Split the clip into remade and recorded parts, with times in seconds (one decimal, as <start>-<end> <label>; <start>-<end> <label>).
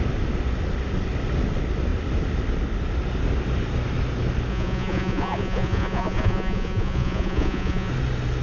0.0-4.5 recorded; 4.5-7.9 remade; 7.9-8.4 recorded